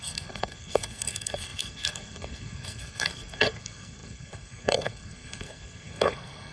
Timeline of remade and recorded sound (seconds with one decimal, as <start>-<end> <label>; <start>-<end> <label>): 0.0-6.5 remade